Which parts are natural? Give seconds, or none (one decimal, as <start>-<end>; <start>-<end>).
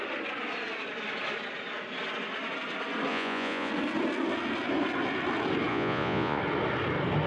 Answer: 0.0-3.1; 3.7-5.7; 6.4-7.3